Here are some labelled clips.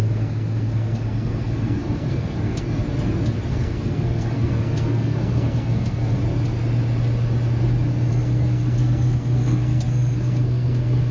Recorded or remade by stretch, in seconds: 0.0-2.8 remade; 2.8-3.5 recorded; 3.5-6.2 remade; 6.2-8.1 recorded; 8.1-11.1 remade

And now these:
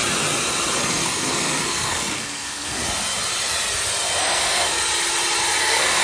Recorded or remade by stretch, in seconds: 0.0-0.8 recorded; 0.8-2.8 remade; 2.8-4.2 recorded; 4.2-4.8 remade; 4.8-5.6 recorded; 5.6-6.0 remade

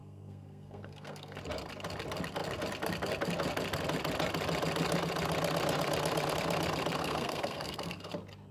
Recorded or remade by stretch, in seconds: 0.0-1.4 remade; 1.4-7.0 recorded; 7.0-8.1 remade; 8.1-8.5 recorded

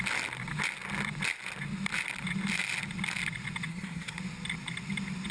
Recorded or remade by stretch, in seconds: 0.0-3.7 recorded; 3.7-4.2 remade; 4.2-5.3 recorded

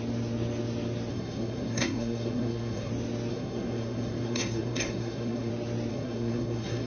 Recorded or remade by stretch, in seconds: 0.0-1.1 recorded; 1.1-2.9 remade; 2.9-3.3 recorded; 3.3-5.5 remade; 5.5-5.9 recorded; 5.9-6.9 remade

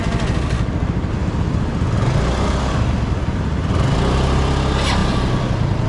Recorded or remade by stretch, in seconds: 0.0-5.9 recorded

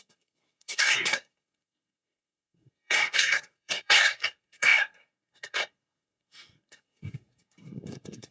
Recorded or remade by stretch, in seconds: 0.0-8.3 remade